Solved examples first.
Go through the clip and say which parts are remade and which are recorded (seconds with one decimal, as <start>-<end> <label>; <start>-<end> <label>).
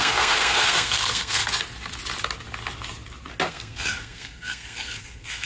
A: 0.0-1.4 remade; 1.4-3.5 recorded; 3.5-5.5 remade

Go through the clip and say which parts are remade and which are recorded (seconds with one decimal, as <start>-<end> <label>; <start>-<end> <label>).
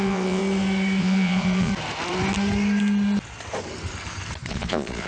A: 0.0-0.4 remade; 0.4-1.0 recorded; 1.0-1.7 remade; 1.7-4.5 recorded; 4.5-5.1 remade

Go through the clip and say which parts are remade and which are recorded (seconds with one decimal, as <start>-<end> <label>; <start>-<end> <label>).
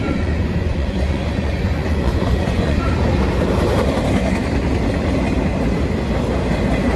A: 0.0-2.8 remade; 2.8-7.0 recorded